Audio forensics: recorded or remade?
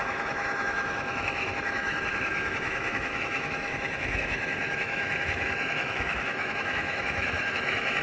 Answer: remade